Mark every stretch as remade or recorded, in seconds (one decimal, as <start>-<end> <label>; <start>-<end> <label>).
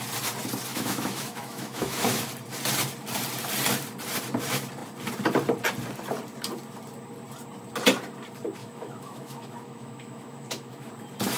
0.0-0.7 recorded; 0.7-2.2 remade; 2.2-8.6 recorded; 8.6-10.9 remade; 10.9-11.4 recorded